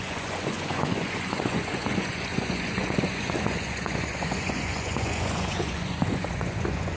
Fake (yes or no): yes